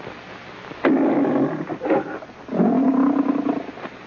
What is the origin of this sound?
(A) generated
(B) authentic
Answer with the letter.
B